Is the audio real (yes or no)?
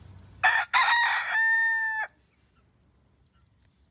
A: yes